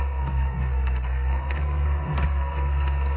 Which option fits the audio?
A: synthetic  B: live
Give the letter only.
A